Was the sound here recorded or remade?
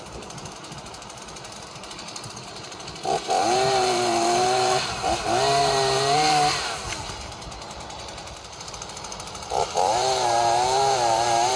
remade